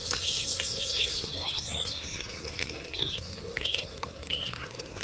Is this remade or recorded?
remade